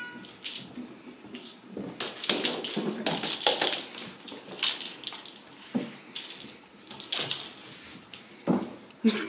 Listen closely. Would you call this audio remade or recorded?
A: recorded